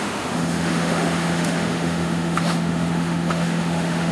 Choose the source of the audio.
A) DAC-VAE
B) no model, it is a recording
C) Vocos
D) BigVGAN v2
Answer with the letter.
A